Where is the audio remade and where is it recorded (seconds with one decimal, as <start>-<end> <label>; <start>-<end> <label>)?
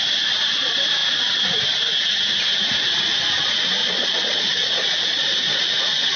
0.0-3.8 recorded; 3.8-5.6 remade; 5.6-6.2 recorded